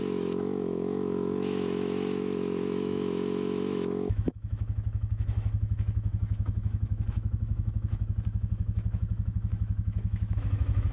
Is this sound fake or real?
fake